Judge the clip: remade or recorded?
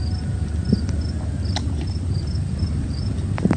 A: recorded